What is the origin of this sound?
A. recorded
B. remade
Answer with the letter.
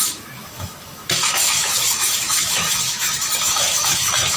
B